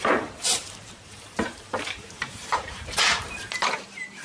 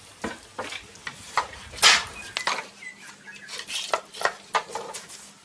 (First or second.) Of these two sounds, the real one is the second